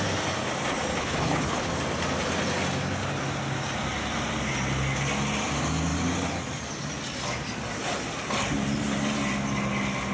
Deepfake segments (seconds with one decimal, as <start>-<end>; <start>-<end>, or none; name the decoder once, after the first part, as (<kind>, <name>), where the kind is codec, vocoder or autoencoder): 1.0-1.7 (codec, HILCodec)

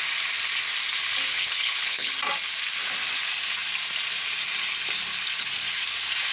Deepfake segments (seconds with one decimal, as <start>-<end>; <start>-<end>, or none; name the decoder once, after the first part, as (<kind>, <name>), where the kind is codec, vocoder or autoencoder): 1.3-2.1 (codec, HILCodec)

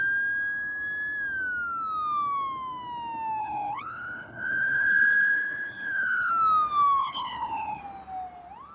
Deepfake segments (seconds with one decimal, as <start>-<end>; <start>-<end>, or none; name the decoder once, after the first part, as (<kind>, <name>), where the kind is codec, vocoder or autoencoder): 3.4-6.3 (codec, HILCodec); 7.0-7.8

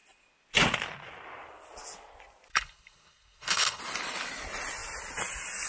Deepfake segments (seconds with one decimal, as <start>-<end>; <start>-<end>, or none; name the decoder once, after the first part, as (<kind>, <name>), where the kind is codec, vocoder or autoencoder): 2.5-3.8 (codec, HILCodec)

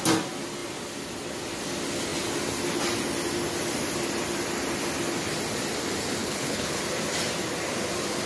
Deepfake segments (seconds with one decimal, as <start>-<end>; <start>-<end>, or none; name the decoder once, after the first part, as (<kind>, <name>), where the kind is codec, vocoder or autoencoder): 6.2-6.8 (codec, HILCodec)

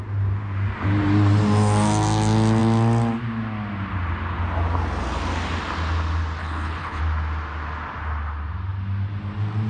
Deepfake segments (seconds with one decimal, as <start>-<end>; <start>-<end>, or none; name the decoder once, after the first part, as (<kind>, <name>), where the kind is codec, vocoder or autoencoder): 6.4-7.0 (codec, HILCodec)